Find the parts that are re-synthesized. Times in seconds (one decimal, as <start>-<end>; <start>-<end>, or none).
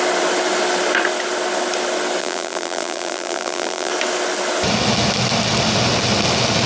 2.2-3.9